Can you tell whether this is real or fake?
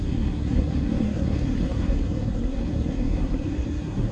fake